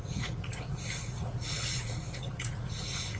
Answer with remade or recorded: remade